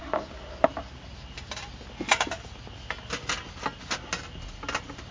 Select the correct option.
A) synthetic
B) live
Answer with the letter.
B